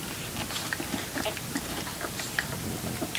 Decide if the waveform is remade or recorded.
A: recorded